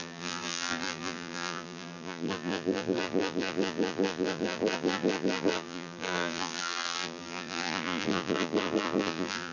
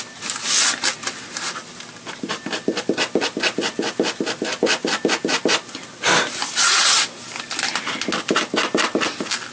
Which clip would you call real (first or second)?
second